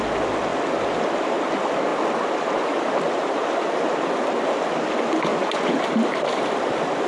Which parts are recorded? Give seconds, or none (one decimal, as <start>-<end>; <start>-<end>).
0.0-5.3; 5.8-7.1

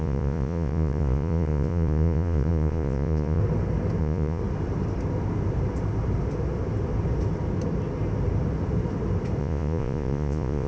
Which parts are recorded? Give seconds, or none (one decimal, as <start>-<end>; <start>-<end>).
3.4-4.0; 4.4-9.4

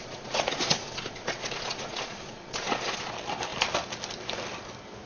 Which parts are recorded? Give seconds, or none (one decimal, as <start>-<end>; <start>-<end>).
3.1-5.1

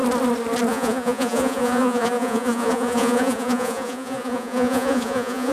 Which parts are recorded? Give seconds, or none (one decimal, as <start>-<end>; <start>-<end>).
0.0-0.7

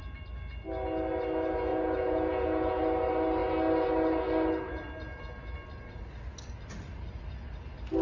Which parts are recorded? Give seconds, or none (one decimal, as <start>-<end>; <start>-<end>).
0.0-1.7; 2.8-8.0

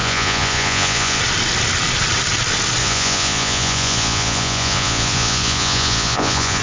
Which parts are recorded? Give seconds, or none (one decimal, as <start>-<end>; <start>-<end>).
1.2-2.8